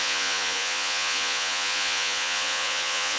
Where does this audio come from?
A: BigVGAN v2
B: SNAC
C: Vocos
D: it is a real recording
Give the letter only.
C